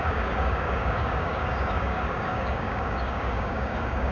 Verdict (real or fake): fake